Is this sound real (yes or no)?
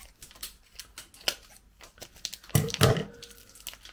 yes